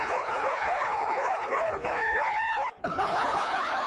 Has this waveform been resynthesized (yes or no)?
yes